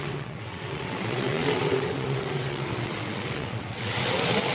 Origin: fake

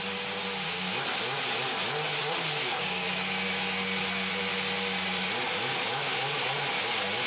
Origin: real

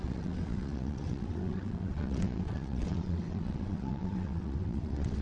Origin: fake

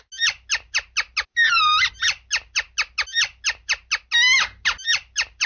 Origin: real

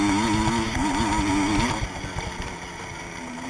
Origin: real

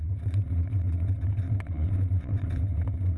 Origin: fake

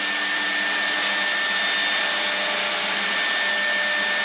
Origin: real